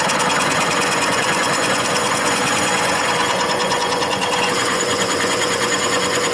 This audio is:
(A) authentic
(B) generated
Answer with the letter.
B